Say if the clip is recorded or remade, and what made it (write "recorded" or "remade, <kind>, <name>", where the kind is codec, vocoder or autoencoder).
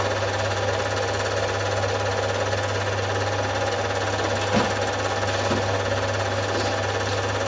recorded